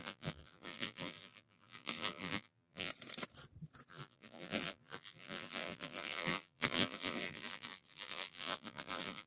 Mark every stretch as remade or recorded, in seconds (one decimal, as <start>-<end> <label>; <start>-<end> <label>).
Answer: 0.0-2.9 remade; 2.9-3.9 recorded; 3.9-9.3 remade